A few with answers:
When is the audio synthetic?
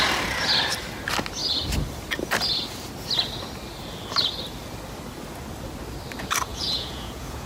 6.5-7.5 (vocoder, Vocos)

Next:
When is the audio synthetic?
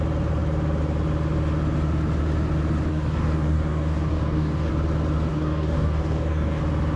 2.9-4.7 (codec, DAC); 5.3-6.6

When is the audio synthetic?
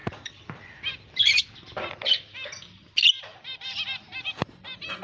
0.0-1.4 (vocoder, BigVGAN v2); 3.3-5.0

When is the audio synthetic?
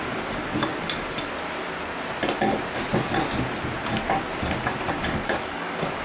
5.0-6.0 (codec, DAC)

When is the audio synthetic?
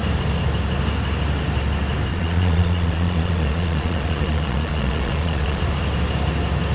2.1-5.6 (vocoder, Vocos)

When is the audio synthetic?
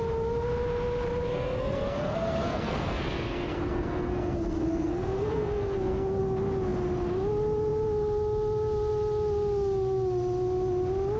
1.3-6.2 (codec, SNAC)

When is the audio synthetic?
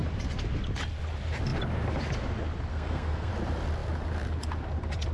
2.7-3.3 (codec, SNAC)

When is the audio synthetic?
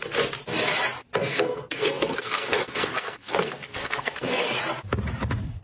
1.2-4.6 (codec, SNAC)